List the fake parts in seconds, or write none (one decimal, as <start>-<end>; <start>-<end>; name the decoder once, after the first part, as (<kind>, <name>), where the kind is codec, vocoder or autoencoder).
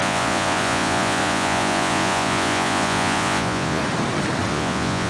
0.0-3.8 (vocoder, Vocos); 4.5-5.1